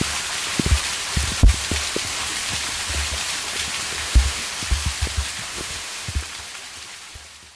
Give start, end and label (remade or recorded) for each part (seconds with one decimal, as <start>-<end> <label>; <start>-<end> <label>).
0.0-4.0 recorded; 4.0-4.5 remade; 4.5-5.5 recorded; 5.5-6.1 remade; 6.1-7.6 recorded